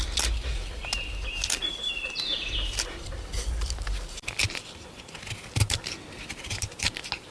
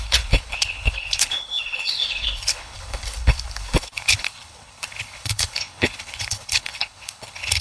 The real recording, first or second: first